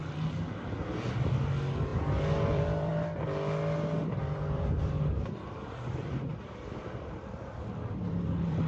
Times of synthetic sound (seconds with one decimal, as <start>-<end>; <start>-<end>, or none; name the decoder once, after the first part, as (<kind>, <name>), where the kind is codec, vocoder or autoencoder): 0.0-1.9 (vocoder, BigVGAN v2); 2.5-2.9; 4.0-8.7